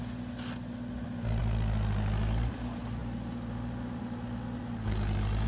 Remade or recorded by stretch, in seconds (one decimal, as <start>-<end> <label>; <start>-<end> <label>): 0.0-5.5 recorded

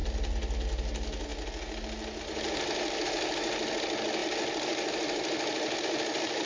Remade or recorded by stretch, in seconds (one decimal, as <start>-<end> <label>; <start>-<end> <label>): 0.0-6.5 recorded

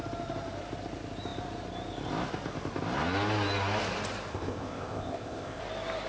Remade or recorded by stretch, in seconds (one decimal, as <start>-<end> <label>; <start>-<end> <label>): 0.0-4.3 recorded; 4.3-5.6 remade; 5.6-6.1 recorded

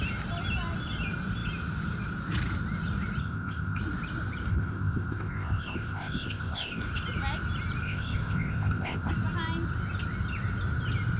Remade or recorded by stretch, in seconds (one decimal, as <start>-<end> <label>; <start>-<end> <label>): 0.0-3.2 recorded; 3.2-3.8 remade; 3.8-4.5 recorded; 4.5-6.8 remade; 6.8-7.8 recorded; 7.8-9.1 remade; 9.1-11.2 recorded

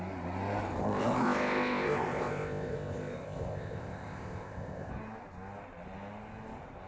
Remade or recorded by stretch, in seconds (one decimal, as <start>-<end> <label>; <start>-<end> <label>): 0.0-0.8 recorded; 0.8-4.9 remade; 4.9-6.9 recorded

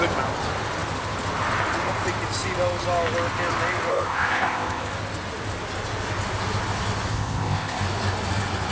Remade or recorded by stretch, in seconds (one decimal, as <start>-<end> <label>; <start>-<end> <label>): 0.0-3.9 recorded; 3.9-4.9 remade; 4.9-7.1 recorded; 7.1-7.8 remade; 7.8-8.7 recorded

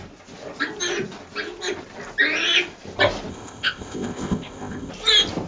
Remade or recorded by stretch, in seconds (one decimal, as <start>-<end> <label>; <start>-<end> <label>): 0.0-3.3 recorded; 3.3-4.9 remade; 4.9-5.5 recorded